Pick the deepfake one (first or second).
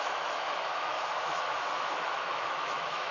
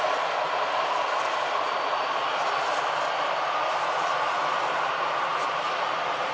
first